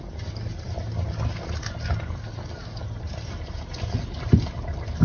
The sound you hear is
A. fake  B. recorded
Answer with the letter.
B